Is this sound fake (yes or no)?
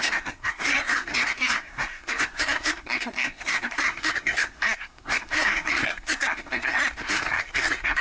yes